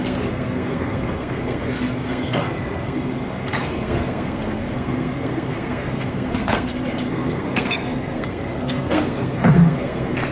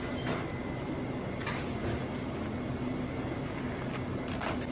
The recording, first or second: second